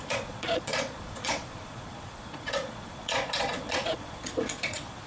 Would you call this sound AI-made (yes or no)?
yes